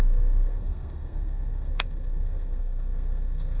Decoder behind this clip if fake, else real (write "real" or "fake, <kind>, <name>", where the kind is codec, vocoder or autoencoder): fake, codec, SNAC